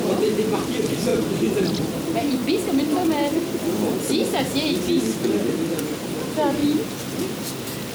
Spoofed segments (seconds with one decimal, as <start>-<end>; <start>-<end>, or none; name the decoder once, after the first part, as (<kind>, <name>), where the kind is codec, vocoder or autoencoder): none

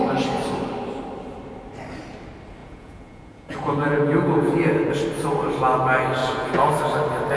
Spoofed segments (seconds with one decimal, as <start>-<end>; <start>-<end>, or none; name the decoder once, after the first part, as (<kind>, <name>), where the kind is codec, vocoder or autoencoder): 2.6-4.9 (vocoder, Vocos); 6.2-6.7

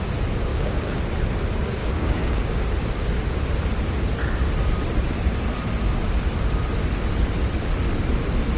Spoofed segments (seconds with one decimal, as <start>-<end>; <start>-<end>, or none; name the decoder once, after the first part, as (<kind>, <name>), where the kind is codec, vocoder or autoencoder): 0.5-1.0 (codec, DAC); 1.8-2.4

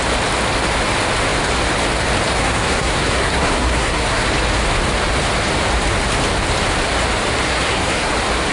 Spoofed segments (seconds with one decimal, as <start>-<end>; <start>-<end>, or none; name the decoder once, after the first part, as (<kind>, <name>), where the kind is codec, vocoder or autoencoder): 2.3-4.3 (codec, SNAC); 7.5-8.1

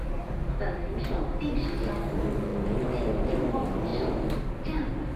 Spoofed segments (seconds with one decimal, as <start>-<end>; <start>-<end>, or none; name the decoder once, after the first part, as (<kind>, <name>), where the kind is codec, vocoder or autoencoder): none